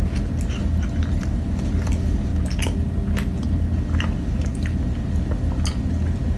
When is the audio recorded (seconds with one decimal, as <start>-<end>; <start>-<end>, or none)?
0.0-6.4